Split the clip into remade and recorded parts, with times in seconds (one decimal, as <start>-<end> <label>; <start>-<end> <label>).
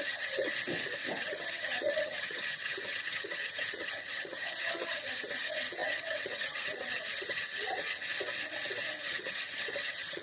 0.0-0.5 remade; 0.5-1.2 recorded; 1.2-8.1 remade; 8.1-9.0 recorded; 9.0-10.2 remade